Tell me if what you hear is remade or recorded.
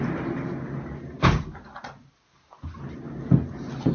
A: recorded